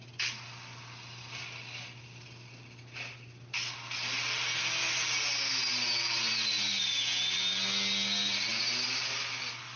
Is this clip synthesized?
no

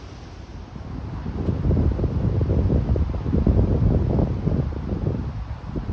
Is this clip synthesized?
no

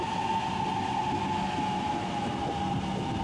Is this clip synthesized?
no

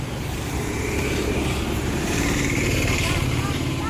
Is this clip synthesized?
yes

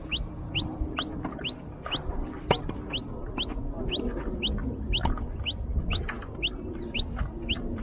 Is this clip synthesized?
no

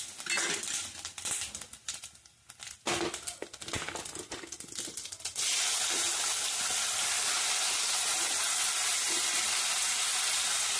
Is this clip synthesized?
no